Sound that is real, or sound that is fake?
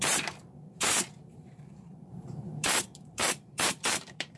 fake